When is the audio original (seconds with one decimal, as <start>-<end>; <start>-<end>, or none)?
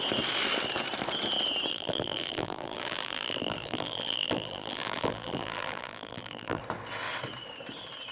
0.0-1.7; 6.6-8.1